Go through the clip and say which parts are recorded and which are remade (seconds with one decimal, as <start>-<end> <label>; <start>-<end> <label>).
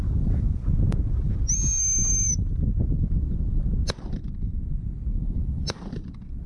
0.0-1.4 remade; 1.4-2.1 recorded; 2.1-2.7 remade; 2.7-4.5 recorded; 4.5-6.5 remade